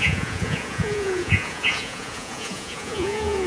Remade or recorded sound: remade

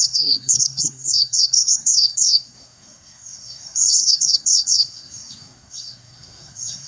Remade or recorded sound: remade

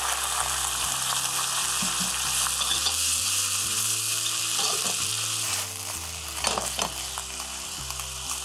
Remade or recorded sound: recorded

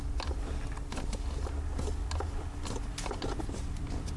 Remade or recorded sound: recorded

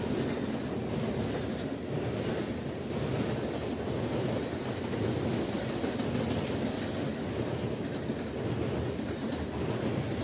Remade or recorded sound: recorded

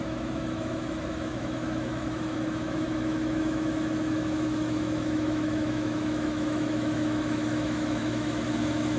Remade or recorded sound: remade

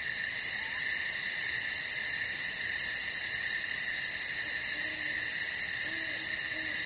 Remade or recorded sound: recorded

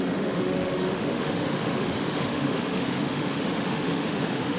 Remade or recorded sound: remade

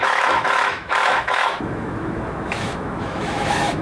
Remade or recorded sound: remade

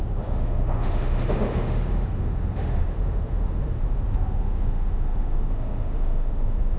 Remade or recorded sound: remade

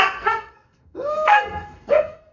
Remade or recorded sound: remade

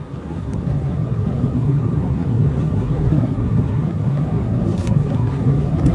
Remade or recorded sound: remade